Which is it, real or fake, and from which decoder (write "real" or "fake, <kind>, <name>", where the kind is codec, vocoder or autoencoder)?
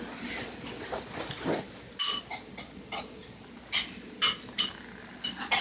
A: real